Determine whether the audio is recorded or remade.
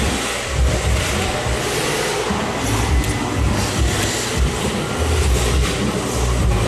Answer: recorded